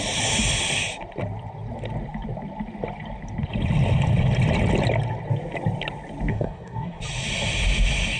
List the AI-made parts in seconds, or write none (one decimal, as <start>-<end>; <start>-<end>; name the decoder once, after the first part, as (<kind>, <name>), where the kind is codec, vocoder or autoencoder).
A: 6.3-7.0 (codec, SNAC)